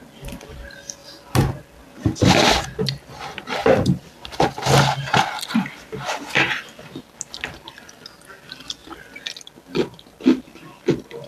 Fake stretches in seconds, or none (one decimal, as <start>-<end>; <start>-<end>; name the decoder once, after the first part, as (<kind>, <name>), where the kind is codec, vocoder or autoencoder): 1.0-1.5 (vocoder, BigVGAN v2); 3.6-7.9